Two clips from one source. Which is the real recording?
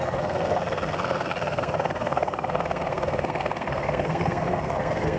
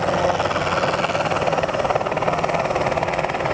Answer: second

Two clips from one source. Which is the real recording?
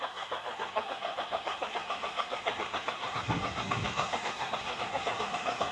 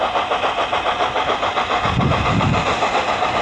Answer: second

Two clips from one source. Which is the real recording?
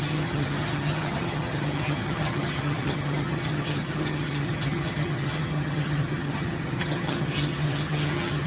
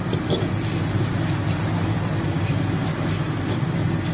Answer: second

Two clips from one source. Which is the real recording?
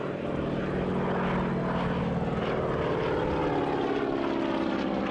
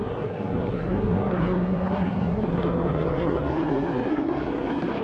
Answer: first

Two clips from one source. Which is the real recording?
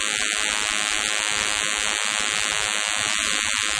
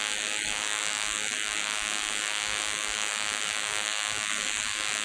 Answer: first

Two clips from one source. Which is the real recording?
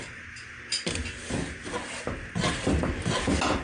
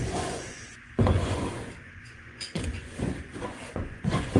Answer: first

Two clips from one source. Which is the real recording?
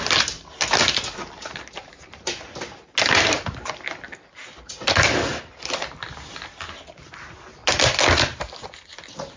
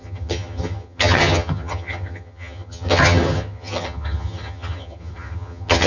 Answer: first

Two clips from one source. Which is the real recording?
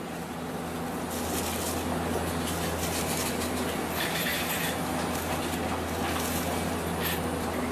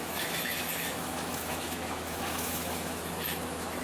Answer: first